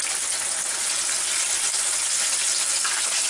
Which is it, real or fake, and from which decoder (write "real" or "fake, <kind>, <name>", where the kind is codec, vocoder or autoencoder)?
real